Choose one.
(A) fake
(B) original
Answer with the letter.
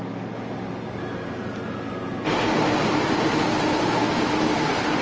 B